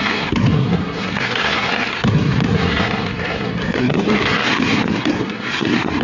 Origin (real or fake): fake